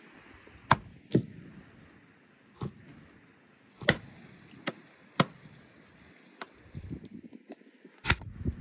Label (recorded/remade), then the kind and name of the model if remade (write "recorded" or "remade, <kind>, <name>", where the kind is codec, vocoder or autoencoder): recorded